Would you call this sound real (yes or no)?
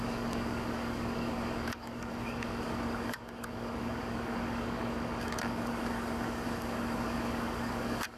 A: no